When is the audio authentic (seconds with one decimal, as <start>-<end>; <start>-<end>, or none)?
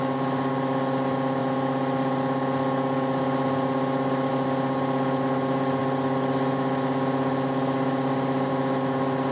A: 0.0-9.3